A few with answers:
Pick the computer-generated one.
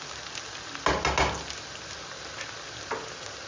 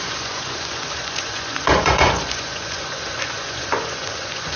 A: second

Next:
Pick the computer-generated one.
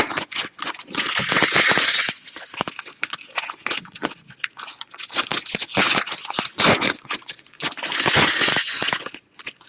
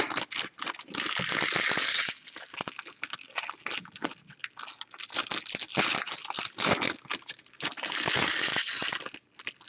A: first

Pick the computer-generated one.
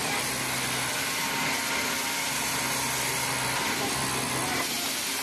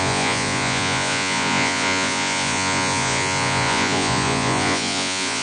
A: second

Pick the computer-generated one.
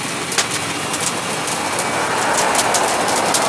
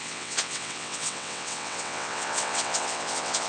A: second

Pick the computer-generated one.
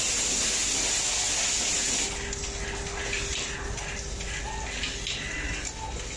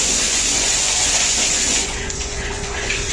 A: second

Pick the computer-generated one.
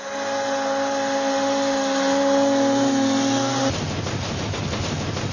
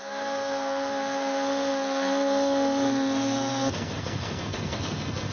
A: second